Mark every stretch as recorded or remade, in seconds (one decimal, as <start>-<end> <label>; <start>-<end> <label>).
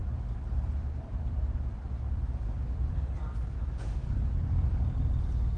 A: 0.0-2.9 remade; 2.9-5.6 recorded